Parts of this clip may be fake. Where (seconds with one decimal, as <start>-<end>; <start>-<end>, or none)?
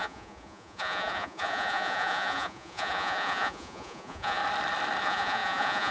0.0-4.4; 5.0-5.9